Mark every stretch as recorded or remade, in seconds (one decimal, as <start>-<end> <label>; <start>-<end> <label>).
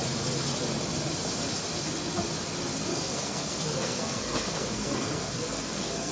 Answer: 0.0-2.9 recorded; 2.9-6.1 remade